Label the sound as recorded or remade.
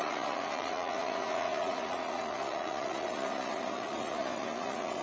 remade